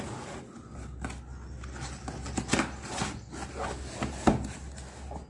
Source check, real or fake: real